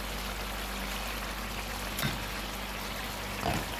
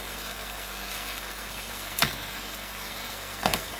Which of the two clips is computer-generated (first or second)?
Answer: second